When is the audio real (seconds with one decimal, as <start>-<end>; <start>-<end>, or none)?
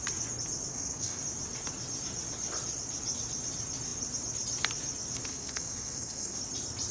0.0-0.7; 1.2-5.3; 6.4-6.9